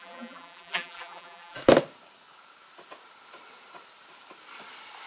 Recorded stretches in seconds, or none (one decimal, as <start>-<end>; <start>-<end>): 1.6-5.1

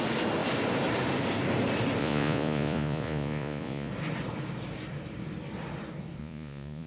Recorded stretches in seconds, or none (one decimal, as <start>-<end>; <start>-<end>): 0.0-2.0; 3.9-6.2

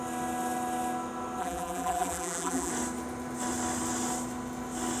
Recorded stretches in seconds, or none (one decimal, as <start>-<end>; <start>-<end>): 0.0-1.4; 2.7-5.0

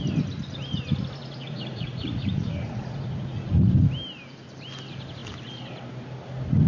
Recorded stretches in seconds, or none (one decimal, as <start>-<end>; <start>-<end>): 0.0-1.2; 3.6-6.7

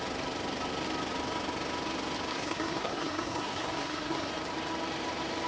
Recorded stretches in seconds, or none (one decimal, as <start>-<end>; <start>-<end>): 0.0-2.3; 4.3-5.5

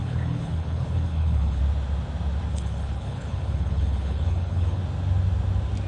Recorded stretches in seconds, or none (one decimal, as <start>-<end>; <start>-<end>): 1.6-2.5; 4.8-5.9